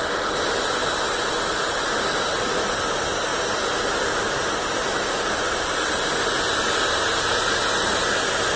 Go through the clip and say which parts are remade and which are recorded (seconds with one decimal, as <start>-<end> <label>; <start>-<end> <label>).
0.0-8.6 recorded